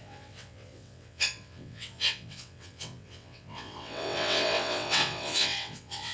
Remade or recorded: remade